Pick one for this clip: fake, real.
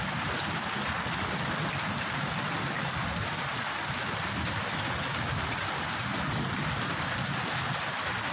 real